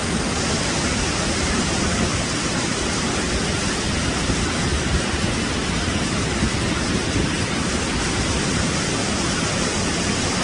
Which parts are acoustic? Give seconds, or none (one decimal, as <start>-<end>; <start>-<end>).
0.0-10.4